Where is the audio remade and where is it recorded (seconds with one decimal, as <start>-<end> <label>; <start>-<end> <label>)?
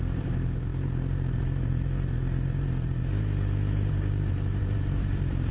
0.0-3.0 remade; 3.0-3.9 recorded; 3.9-5.5 remade